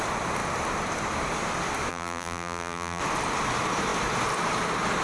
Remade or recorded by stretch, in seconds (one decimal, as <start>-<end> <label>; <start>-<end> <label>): 0.0-1.9 recorded; 1.9-3.0 remade; 3.0-5.0 recorded